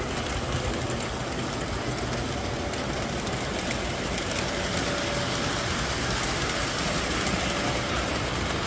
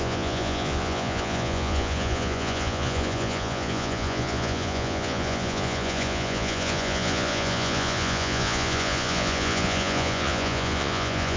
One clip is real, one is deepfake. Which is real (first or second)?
first